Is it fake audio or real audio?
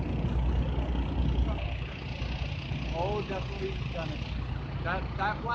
real